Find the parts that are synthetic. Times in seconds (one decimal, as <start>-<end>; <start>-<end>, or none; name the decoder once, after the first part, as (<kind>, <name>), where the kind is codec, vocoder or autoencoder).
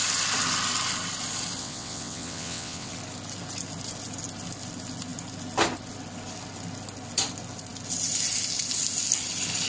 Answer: 1.6-2.9 (vocoder, WaveNeXt)